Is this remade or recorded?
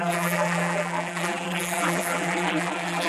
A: remade